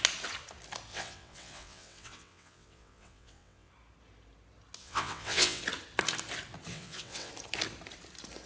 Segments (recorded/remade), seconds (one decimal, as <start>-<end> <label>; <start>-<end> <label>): 0.0-0.9 recorded; 0.9-3.7 remade; 3.7-4.8 recorded; 4.8-5.6 remade; 5.6-6.7 recorded; 6.7-7.3 remade; 7.3-8.5 recorded